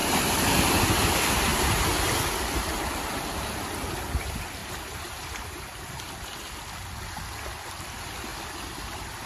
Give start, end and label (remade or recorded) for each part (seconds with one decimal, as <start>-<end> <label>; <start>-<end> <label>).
0.0-0.8 remade; 0.8-4.6 recorded; 4.6-6.0 remade; 6.0-9.3 recorded